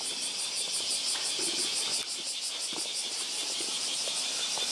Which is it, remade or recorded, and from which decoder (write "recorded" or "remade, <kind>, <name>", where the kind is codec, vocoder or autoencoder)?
remade, vocoder, BigVGAN v2